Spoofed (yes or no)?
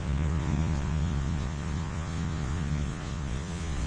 yes